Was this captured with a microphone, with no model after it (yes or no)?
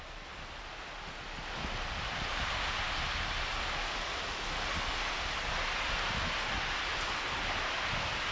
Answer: yes